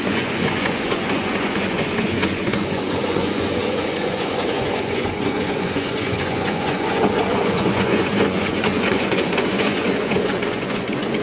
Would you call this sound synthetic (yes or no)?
yes